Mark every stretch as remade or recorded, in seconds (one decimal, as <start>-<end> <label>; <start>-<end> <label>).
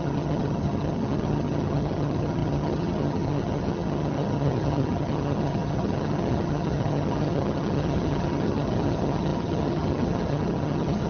0.0-11.1 remade